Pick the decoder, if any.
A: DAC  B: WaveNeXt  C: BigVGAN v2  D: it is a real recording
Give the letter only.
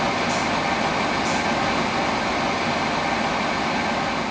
D